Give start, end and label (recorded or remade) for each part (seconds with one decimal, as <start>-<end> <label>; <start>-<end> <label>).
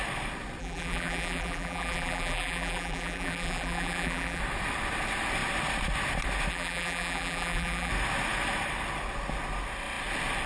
0.0-0.6 recorded; 0.6-4.4 remade; 4.4-6.5 recorded; 6.5-7.9 remade; 7.9-10.5 recorded